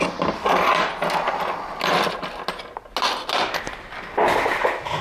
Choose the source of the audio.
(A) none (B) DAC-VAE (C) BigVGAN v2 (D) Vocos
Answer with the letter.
A